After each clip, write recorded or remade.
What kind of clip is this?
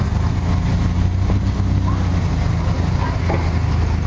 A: recorded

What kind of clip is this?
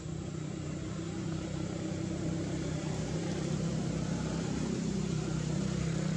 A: remade